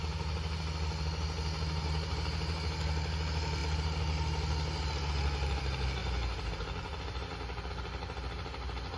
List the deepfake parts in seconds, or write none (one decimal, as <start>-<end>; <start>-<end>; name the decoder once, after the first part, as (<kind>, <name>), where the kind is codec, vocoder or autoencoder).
none